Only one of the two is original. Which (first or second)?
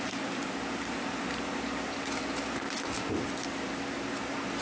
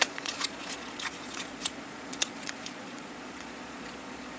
first